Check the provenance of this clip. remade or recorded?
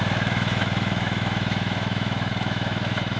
remade